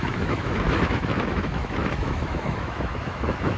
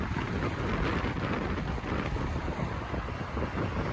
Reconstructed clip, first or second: first